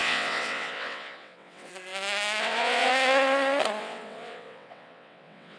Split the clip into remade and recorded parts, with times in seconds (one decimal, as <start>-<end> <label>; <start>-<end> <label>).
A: 0.0-1.7 remade; 1.7-2.4 recorded; 2.4-2.9 remade; 2.9-3.8 recorded; 3.8-5.6 remade